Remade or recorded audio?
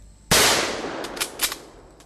recorded